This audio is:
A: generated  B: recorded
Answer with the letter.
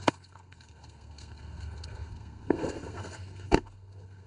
A